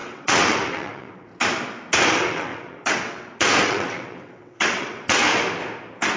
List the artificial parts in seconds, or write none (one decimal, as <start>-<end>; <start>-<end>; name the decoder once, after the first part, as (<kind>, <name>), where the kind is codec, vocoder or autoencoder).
0.0-1.3 (vocoder, WaveNeXt); 2.0-5.3